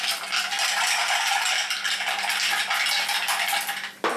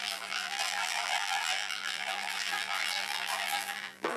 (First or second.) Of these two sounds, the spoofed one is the second